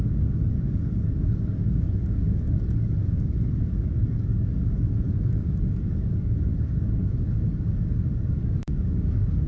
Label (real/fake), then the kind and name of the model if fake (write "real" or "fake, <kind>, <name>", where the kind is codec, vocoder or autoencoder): fake, codec, DAC